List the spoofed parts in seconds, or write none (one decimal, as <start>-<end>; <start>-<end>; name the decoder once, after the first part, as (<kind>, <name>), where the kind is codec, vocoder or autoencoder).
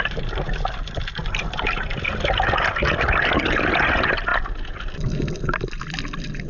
none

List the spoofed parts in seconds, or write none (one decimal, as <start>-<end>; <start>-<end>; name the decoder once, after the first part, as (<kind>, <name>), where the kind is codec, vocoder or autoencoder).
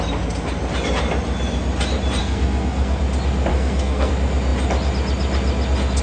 2.2-3.0 (codec, SNAC); 3.5-4.1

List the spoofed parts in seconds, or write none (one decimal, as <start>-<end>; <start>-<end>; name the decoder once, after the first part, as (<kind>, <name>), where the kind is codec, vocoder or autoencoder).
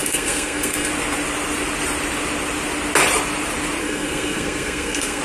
0.0-0.9 (codec, SNAC); 3.8-5.2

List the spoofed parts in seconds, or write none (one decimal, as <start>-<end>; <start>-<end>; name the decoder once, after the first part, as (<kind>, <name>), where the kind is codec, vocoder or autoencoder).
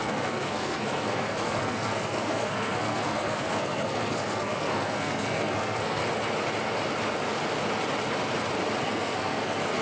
0.0-6.0 (codec, SNAC); 8.8-9.8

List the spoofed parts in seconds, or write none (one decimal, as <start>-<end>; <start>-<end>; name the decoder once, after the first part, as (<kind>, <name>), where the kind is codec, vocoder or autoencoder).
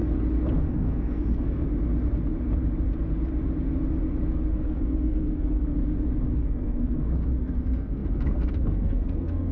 0.6-1.7 (codec, SNAC); 4.5-5.7; 6.3-9.5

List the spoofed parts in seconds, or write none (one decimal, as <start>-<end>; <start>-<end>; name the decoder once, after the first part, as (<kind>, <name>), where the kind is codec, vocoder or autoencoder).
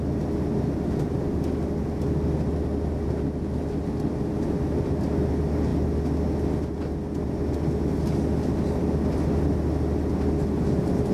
none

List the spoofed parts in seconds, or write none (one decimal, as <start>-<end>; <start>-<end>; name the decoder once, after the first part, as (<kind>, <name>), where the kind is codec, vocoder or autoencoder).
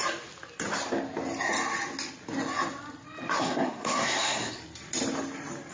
3.4-4.6 (codec, SNAC)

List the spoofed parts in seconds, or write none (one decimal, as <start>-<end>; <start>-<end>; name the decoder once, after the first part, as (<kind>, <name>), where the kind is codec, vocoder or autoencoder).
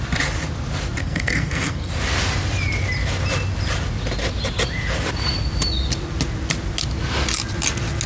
1.0-1.9 (codec, SNAC)